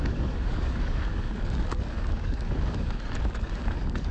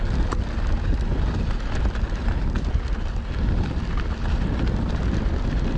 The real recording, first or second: second